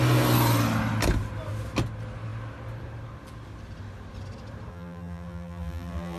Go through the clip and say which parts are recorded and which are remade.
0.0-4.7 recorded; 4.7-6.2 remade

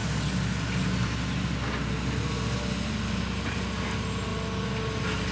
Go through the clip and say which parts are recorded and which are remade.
0.0-5.3 recorded

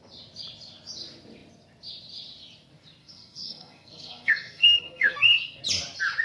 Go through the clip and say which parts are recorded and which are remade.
0.0-3.0 recorded; 3.0-5.6 remade; 5.6-6.2 recorded

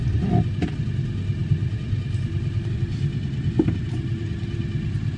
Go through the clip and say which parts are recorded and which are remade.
0.0-5.2 recorded

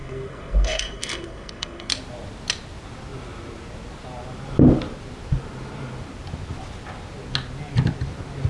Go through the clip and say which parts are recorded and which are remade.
0.0-1.9 remade; 1.9-8.5 recorded

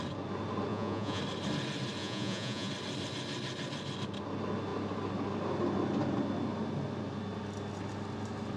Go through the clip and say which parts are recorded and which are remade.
0.0-0.7 recorded; 0.7-1.2 remade; 1.2-2.0 recorded; 2.0-2.7 remade; 2.7-8.6 recorded

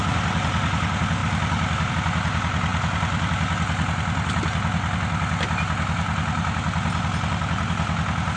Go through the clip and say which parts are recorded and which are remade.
0.0-8.4 recorded